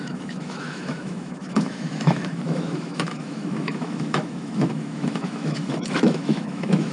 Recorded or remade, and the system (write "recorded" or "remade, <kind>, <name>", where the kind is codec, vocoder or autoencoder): remade, autoencoder, DAC-VAE